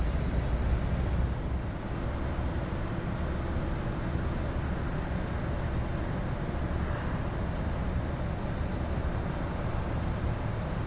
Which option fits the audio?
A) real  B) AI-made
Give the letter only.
A